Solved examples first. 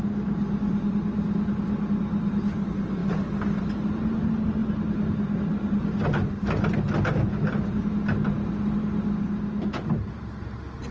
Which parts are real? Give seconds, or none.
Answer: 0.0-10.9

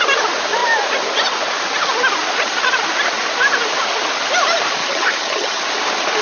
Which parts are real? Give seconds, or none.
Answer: 0.0-4.8; 5.6-6.2

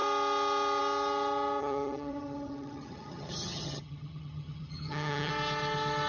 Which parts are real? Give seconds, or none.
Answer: 0.0-1.6; 5.3-6.1

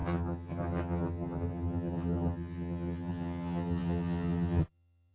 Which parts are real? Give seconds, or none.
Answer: none

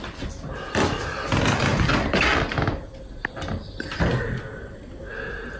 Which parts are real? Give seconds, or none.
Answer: 0.0-5.6